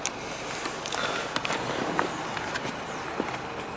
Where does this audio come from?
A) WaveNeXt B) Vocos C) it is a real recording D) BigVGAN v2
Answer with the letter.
C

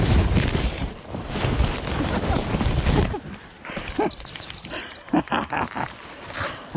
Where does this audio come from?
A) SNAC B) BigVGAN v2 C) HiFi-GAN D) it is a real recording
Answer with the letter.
B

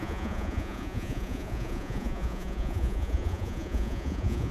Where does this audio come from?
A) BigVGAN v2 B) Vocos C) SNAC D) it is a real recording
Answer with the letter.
B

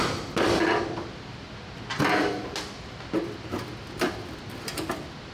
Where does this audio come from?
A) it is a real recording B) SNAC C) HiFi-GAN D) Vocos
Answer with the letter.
A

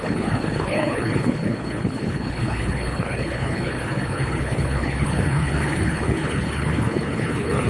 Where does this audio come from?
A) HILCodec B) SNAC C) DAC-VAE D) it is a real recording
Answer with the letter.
A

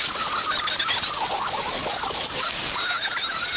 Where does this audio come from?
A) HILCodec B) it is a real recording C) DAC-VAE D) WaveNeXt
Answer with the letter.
B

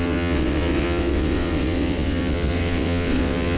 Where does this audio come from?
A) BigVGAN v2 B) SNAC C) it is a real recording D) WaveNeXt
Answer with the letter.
D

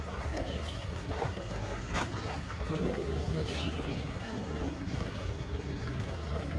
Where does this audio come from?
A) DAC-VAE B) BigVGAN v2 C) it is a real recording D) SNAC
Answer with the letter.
D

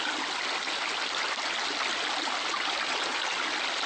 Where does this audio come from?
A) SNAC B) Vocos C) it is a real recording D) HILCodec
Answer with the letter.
C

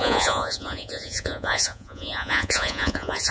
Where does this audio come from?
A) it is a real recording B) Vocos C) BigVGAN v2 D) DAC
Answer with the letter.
B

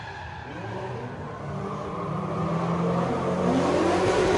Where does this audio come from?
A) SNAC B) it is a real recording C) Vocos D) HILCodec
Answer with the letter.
B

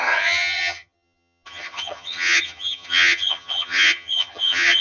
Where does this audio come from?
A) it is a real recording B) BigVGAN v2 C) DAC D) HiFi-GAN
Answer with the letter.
D